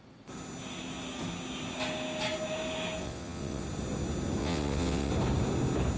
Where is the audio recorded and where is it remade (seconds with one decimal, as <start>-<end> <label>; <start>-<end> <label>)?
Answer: 0.0-3.0 recorded; 3.0-3.6 remade; 3.6-4.4 recorded; 4.4-5.1 remade; 5.1-6.0 recorded